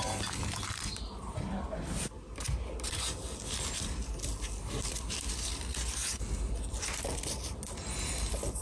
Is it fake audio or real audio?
real